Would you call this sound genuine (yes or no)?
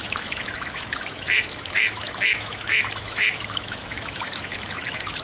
no